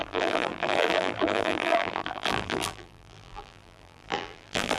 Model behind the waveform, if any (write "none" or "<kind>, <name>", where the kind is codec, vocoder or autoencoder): vocoder, BigVGAN v2